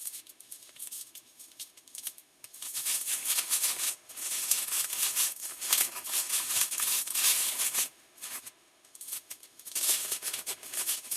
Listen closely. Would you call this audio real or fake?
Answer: fake